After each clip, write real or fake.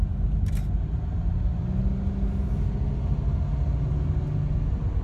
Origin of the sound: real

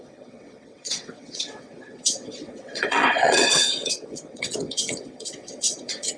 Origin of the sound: fake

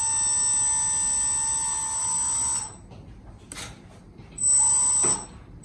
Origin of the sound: real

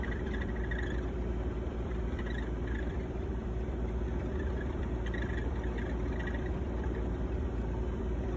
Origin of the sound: fake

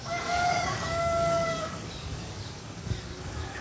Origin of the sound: fake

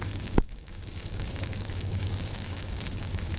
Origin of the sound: fake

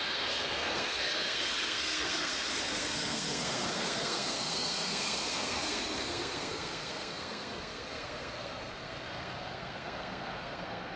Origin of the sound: fake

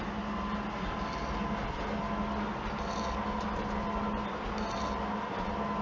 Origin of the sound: real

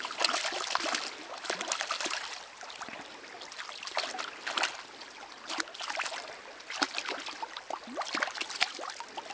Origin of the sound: real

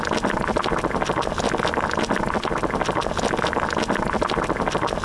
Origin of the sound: real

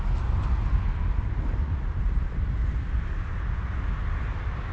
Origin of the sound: real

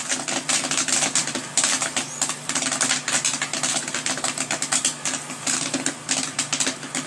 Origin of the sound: real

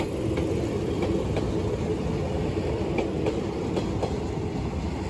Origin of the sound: real